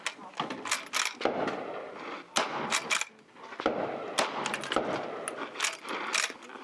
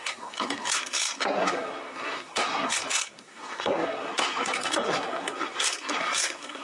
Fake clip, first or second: second